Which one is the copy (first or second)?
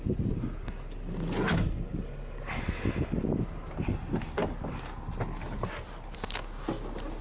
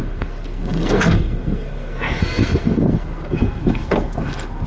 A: second